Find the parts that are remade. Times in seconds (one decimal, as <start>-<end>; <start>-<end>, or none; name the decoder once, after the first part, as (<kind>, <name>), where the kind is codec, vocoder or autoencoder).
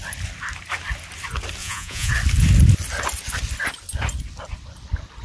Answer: 1.6-2.1 (vocoder, Vocos)